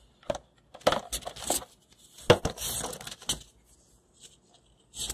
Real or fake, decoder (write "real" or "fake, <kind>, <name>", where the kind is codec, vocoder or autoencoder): real